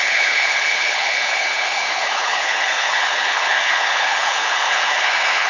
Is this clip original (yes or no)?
no